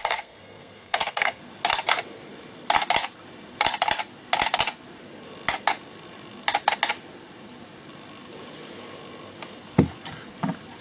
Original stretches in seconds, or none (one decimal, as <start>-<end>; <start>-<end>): 1.4-10.8